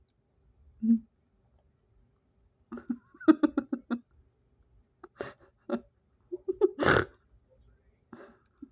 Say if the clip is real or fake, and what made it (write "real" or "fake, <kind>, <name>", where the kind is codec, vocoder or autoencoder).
real